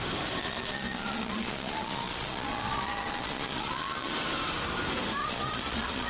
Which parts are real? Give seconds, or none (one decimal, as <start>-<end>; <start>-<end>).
0.0-0.4; 4.1-5.2

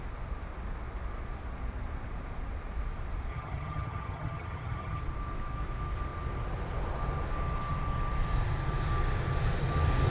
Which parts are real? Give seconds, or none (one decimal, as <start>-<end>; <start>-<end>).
0.0-3.3; 5.0-10.1